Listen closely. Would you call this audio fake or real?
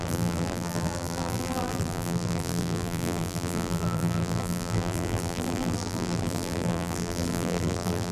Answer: fake